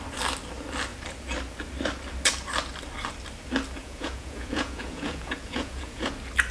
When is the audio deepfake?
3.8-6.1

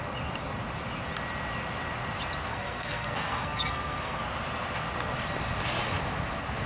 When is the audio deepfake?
2.5-4.2

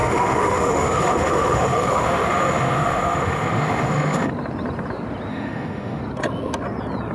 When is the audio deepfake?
0.0-4.3; 5.3-6.0